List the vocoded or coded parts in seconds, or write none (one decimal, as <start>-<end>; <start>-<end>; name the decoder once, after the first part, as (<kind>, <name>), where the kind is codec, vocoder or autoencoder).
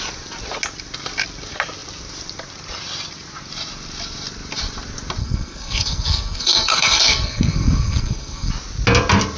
5.2-8.5 (codec, SNAC)